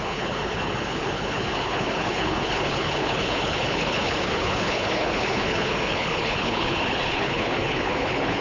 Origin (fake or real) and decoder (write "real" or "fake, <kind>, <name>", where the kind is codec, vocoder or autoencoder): fake, codec, HILCodec